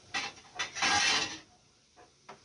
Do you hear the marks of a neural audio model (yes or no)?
no